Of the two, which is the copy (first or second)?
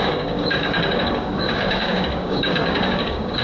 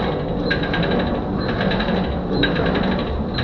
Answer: first